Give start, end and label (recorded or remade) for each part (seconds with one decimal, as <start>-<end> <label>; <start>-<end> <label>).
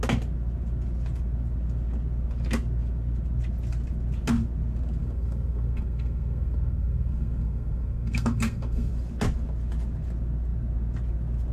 0.0-5.0 recorded; 5.0-8.9 remade; 8.9-11.5 recorded